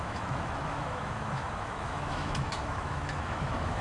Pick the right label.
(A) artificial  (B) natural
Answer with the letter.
A